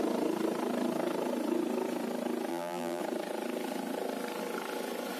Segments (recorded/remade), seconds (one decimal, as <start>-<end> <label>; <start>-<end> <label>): 0.0-2.5 recorded; 2.5-3.0 remade; 3.0-5.2 recorded